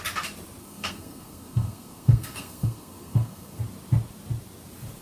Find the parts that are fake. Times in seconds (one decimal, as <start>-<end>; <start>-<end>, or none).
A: 0.6-3.6